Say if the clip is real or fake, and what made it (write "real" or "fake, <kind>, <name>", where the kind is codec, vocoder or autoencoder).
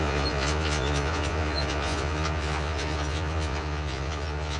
fake, vocoder, Vocos